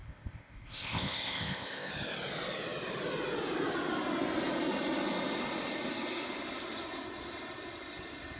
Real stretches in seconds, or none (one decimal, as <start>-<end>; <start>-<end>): 1.9-8.4